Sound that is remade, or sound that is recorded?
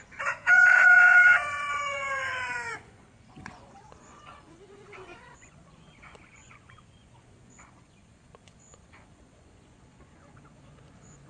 remade